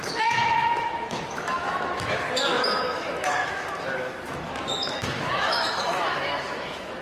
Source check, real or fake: fake